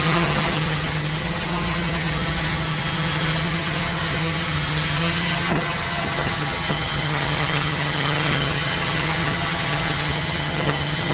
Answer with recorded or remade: remade